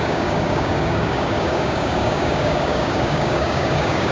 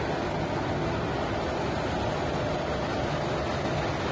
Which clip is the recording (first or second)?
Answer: second